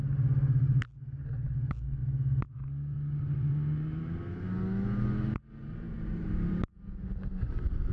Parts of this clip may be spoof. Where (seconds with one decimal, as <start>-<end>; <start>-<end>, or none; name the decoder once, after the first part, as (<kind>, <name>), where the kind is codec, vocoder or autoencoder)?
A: 5.6-6.6 (vocoder, BigVGAN v2)